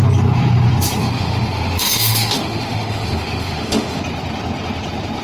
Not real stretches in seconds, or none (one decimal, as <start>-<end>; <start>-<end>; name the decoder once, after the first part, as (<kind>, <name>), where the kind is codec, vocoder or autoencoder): 1.0-4.0 (autoencoder, DAC-VAE)